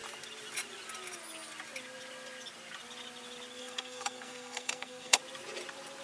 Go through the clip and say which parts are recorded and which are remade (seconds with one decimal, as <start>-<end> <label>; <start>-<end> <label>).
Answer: 0.0-3.6 recorded; 3.6-5.2 remade; 5.2-6.0 recorded